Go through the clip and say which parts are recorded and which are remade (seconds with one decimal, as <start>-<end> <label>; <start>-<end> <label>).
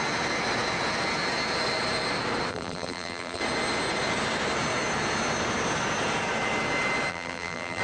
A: 0.0-2.5 recorded; 2.5-3.4 remade; 3.4-7.1 recorded; 7.1-7.8 remade